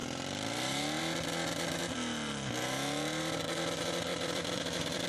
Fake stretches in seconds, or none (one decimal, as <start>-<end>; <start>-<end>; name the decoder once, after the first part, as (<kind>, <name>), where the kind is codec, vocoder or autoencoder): 4.1-5.1 (vocoder, BigVGAN v2)